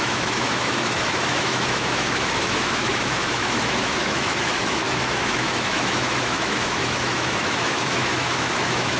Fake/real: fake